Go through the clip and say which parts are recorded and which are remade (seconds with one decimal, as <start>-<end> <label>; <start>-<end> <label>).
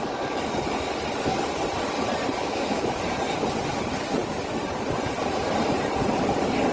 0.0-2.4 recorded; 2.4-3.0 remade; 3.0-6.7 recorded